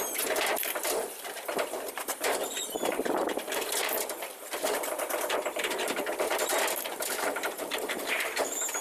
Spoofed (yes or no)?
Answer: yes